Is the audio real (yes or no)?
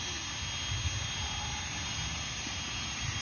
yes